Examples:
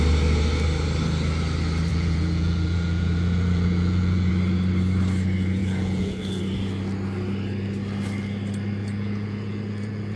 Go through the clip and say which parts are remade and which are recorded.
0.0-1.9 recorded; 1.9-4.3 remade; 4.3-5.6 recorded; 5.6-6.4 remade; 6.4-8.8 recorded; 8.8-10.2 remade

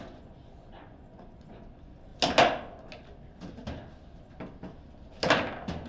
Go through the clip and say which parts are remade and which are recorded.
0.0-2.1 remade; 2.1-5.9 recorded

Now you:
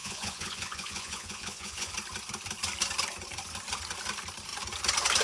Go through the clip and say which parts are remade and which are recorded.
0.0-1.9 remade; 1.9-5.2 recorded